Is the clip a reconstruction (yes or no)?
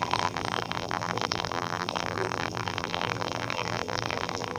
yes